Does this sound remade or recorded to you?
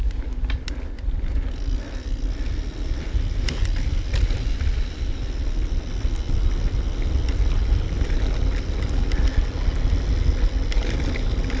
recorded